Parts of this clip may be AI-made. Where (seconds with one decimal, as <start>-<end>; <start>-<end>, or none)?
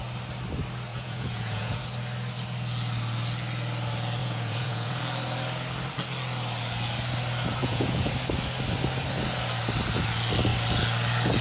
0.9-1.8; 4.2-5.0; 7.6-8.1